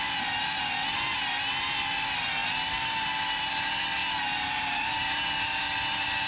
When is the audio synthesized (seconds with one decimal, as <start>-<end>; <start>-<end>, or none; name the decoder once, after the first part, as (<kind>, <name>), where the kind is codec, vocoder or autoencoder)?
4.0-5.1 (vocoder, BigVGAN v2)